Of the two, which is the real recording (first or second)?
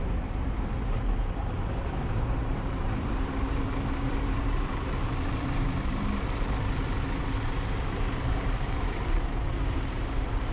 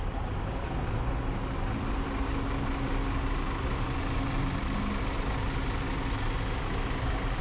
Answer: second